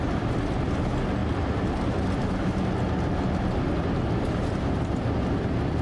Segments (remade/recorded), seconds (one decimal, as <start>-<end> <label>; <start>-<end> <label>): 0.0-5.8 recorded